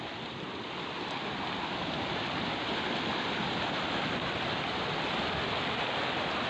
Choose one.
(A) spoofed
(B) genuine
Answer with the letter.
B